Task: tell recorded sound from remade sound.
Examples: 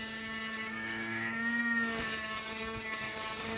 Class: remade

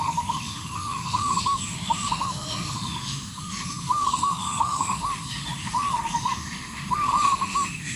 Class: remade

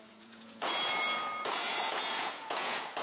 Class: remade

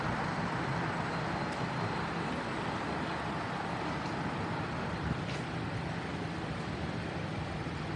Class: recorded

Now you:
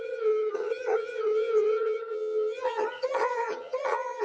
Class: remade